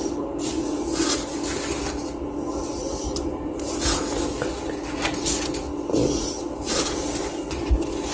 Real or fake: real